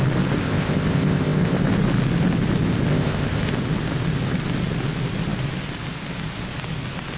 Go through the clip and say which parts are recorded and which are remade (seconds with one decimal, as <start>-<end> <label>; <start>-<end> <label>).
0.0-0.4 recorded; 0.4-1.6 remade; 1.6-2.9 recorded; 2.9-3.5 remade; 3.5-7.2 recorded